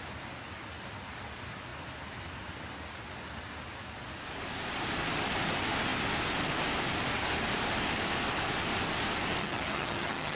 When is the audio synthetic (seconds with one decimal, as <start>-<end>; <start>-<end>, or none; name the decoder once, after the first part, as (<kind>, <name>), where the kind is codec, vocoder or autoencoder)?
9.4-10.4 (vocoder, HiFi-GAN)